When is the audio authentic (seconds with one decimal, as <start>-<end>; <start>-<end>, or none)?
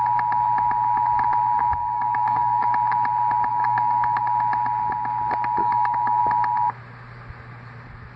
0.0-1.8; 2.7-3.5; 4.2-5.6; 6.2-8.2